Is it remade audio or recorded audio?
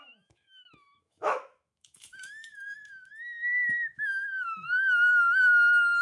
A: remade